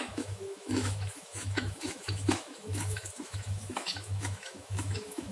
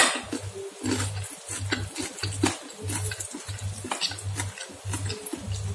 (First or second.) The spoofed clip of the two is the first